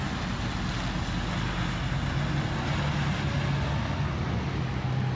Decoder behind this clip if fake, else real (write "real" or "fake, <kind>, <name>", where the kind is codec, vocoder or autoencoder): real